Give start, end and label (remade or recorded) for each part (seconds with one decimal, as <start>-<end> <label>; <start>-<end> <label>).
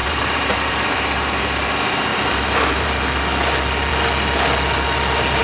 0.0-1.4 remade; 1.4-2.1 recorded; 2.1-2.9 remade; 2.9-5.4 recorded